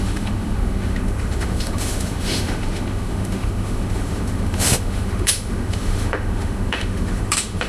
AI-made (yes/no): yes